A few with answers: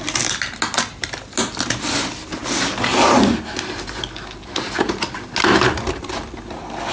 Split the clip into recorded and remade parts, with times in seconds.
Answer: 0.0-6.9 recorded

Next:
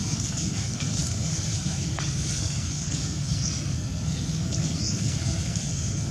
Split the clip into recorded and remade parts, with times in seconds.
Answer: 0.0-6.1 remade

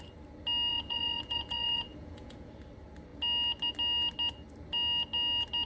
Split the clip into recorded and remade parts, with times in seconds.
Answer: 0.0-0.7 recorded; 0.7-2.5 remade; 2.5-5.7 recorded

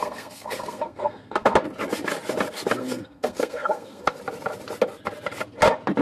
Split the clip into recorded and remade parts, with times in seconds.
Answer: 0.0-1.6 remade; 1.6-2.8 recorded; 2.8-4.2 remade; 4.2-6.0 recorded